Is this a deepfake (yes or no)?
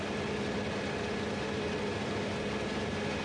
no